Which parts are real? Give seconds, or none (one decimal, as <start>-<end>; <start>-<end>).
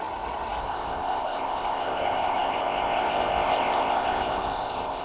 0.0-0.6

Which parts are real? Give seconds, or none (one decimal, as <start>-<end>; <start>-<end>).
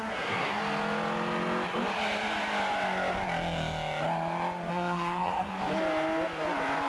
0.6-4.7; 5.5-6.9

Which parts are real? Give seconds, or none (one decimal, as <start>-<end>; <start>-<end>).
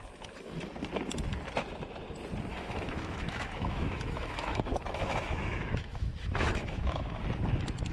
0.0-2.5; 7.2-7.9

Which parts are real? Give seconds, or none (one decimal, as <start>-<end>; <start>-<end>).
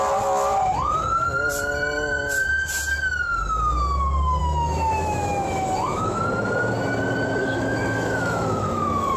0.0-4.4; 6.2-7.4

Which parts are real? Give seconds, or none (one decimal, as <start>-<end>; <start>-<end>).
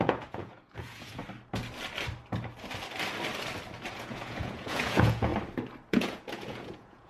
1.2-3.9; 5.3-5.9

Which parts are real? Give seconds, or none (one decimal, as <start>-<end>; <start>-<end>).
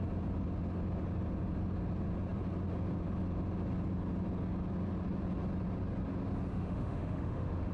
0.0-6.5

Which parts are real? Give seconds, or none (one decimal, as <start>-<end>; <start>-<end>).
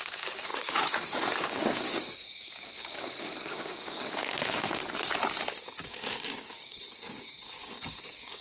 4.8-5.5